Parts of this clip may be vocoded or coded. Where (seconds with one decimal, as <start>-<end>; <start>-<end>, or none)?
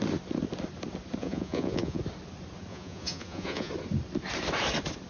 1.2-2.0; 2.7-3.7